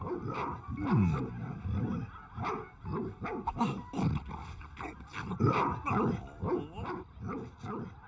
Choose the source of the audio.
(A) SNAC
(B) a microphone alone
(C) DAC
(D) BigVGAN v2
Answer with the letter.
B